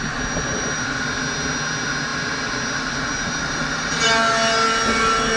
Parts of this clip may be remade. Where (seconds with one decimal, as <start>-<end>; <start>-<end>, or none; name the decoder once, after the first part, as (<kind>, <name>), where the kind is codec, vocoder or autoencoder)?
none